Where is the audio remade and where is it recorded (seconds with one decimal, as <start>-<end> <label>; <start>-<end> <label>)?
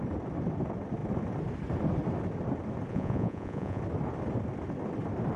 0.0-2.9 recorded; 2.9-3.8 remade; 3.8-5.4 recorded